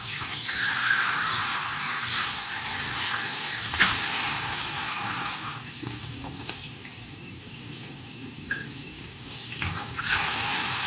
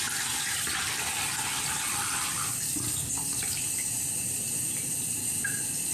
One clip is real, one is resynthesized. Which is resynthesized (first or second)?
first